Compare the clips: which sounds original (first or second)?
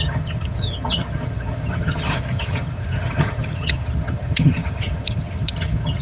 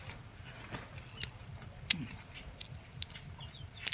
second